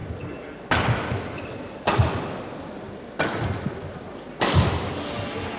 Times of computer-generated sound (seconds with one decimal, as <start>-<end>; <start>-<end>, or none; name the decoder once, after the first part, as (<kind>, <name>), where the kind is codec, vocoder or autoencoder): none